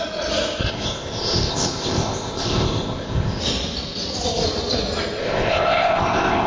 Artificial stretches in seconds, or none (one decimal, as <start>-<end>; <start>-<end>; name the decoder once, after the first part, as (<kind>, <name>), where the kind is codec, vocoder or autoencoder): 0.6-3.4 (codec, ZipCodec); 5.2-6.5